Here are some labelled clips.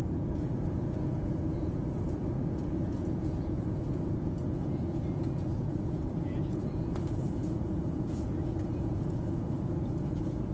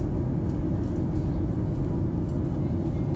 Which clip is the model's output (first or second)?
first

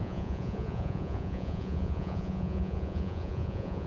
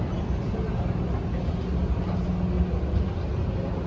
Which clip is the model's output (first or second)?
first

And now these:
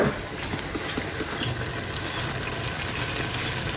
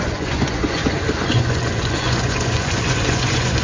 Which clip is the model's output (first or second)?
second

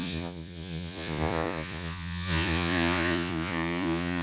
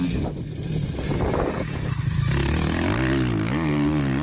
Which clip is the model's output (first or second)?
first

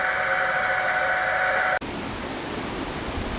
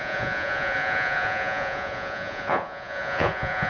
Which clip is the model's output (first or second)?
second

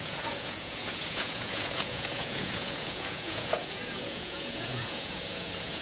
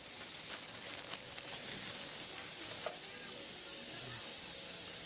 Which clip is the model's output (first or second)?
first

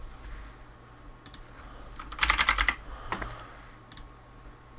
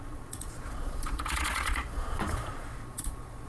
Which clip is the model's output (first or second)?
second